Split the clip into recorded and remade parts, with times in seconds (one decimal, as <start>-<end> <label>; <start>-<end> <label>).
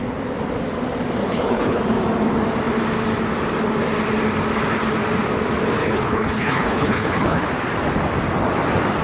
0.0-1.2 recorded; 1.2-1.8 remade; 1.8-5.8 recorded; 5.8-7.5 remade; 7.5-9.0 recorded